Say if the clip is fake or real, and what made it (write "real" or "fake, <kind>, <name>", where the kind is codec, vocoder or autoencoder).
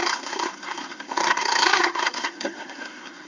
fake, codec, SNAC